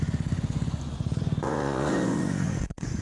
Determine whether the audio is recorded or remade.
remade